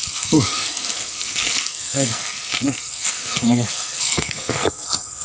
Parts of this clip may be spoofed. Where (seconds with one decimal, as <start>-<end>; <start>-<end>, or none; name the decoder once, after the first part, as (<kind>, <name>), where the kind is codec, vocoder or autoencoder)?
0.0-5.2 (codec, SNAC)